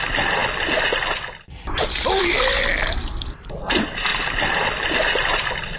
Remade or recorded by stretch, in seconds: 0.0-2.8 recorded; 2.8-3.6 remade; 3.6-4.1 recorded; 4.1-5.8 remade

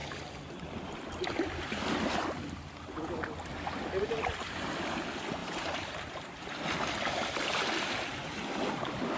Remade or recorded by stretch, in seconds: 0.0-5.4 recorded; 5.4-6.5 remade; 6.5-9.2 recorded

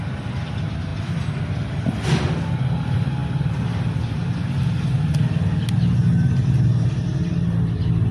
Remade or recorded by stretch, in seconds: 0.0-0.9 recorded; 0.9-1.5 remade; 1.5-8.1 recorded

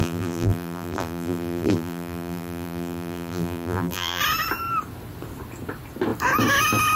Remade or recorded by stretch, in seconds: 0.0-4.2 remade; 4.2-7.0 recorded

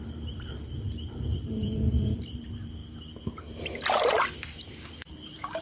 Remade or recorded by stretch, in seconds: 0.0-2.8 remade; 2.8-4.7 recorded; 4.7-5.6 remade

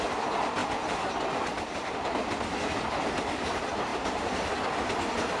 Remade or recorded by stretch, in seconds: 0.0-3.9 recorded; 3.9-4.6 remade; 4.6-5.4 recorded